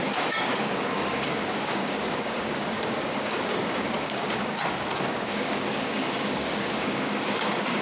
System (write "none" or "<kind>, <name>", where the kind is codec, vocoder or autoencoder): codec, DAC